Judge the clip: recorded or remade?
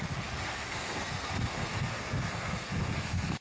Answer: remade